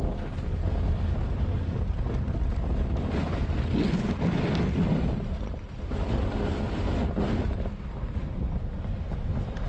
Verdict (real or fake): real